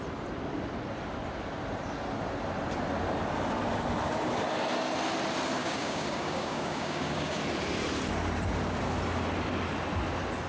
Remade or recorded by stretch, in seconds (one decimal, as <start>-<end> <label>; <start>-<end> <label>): 0.0-5.6 recorded; 5.6-7.4 remade; 7.4-10.5 recorded